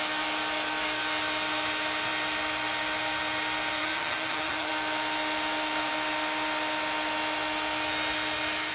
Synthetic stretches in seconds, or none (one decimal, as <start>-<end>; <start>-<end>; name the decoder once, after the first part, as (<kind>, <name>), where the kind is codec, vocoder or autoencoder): 3.8-4.7 (vocoder, HiFi-GAN)